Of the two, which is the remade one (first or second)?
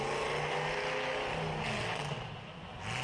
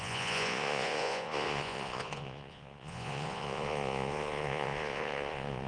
second